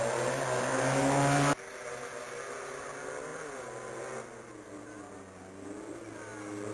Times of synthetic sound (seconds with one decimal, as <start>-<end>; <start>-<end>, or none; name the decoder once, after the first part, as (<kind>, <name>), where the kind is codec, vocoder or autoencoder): none